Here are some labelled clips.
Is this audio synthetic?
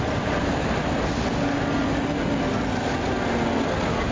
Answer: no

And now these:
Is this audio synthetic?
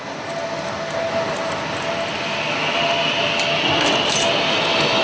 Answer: no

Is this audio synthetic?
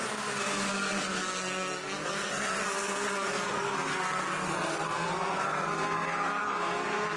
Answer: yes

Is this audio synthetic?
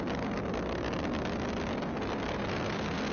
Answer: no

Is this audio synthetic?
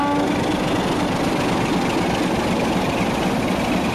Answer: no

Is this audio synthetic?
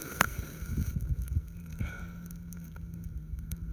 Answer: yes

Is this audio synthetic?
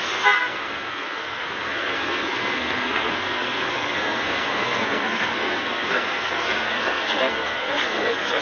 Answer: yes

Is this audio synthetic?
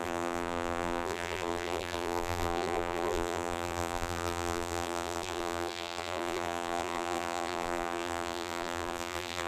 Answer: yes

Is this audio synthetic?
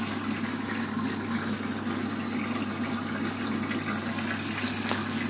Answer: no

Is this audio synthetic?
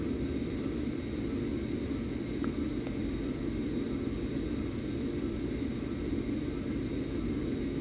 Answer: no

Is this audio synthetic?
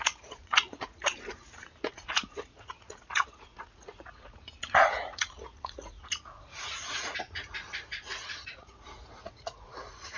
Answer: yes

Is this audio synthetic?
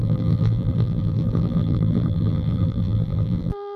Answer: yes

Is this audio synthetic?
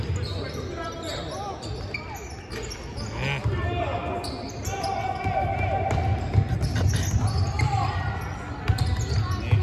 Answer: no